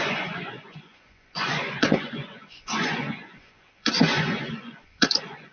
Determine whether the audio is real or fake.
fake